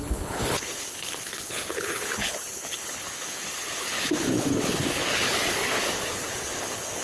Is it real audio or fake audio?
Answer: fake